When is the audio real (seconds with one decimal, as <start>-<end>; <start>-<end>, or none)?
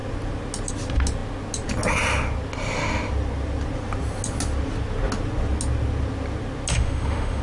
0.0-6.7